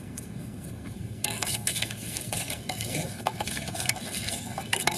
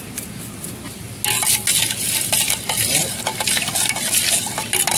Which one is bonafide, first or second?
second